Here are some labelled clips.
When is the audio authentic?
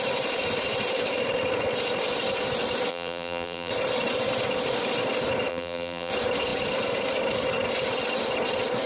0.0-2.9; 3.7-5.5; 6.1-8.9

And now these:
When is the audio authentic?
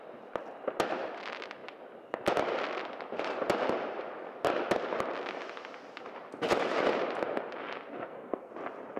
0.0-7.9; 8.5-9.0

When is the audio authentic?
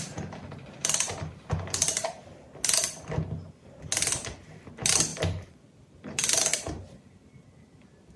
0.0-0.4; 1.3-5.1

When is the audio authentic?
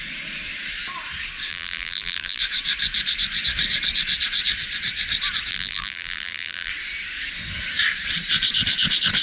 0.0-1.5; 2.4-5.5; 6.7-9.2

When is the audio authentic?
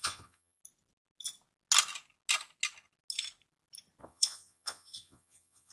0.6-4.0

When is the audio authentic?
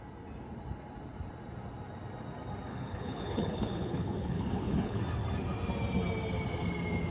0.0-2.7; 5.0-7.1